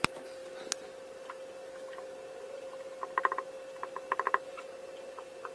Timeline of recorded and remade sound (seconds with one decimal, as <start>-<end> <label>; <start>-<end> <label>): 0.0-5.5 recorded